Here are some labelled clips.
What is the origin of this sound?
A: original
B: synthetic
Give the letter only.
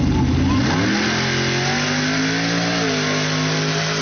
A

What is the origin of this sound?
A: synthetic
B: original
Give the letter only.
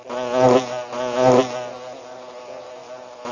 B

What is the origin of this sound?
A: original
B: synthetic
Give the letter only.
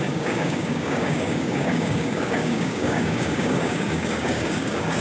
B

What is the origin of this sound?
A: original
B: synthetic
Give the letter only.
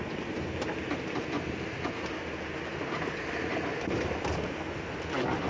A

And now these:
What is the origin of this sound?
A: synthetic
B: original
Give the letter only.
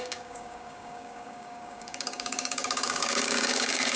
A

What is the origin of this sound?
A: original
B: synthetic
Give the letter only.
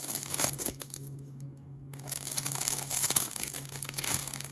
B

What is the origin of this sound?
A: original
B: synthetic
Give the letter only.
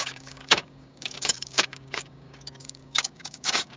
B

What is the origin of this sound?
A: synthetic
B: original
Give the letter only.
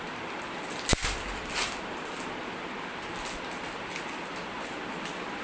B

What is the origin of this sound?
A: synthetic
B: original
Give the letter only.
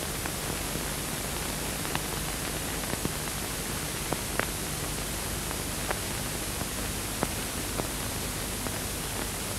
B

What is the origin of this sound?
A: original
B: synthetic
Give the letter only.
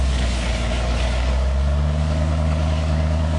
B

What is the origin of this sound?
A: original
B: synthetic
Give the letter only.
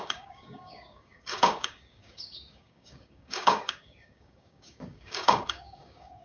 B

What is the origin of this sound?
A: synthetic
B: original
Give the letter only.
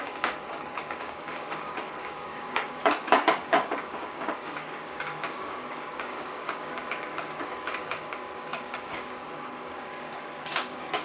A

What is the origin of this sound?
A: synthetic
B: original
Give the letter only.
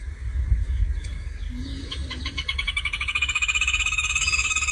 A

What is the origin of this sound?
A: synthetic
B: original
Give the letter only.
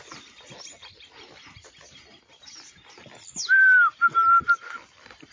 B